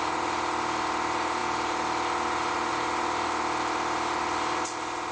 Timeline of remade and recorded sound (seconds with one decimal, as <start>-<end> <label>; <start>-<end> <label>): 0.0-5.1 recorded